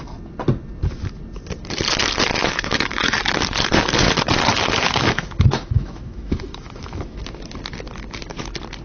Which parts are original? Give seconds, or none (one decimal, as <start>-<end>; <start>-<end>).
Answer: 0.0-2.3; 3.2-4.5; 7.2-8.8